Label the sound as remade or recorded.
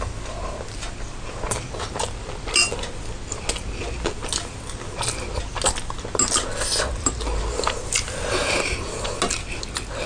recorded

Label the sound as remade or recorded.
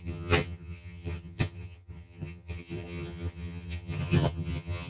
remade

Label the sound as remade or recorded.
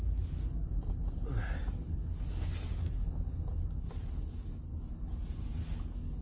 recorded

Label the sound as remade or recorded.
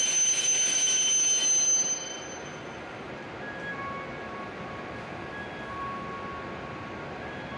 recorded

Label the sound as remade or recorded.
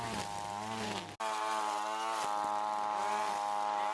recorded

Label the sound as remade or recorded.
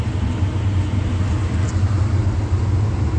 recorded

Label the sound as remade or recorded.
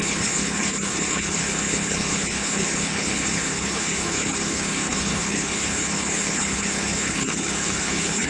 remade